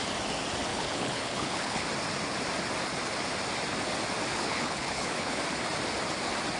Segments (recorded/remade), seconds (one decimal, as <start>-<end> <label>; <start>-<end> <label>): 0.0-0.7 recorded; 0.7-1.9 remade; 1.9-4.3 recorded; 4.3-5.4 remade; 5.4-6.6 recorded